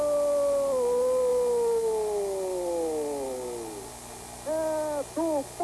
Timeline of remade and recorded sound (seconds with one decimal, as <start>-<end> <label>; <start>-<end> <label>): 0.0-5.6 recorded